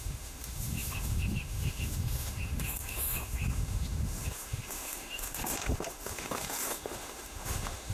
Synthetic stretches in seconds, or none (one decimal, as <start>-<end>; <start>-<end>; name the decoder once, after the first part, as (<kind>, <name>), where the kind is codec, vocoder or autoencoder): 0.0-7.9 (autoencoder, DAC-VAE)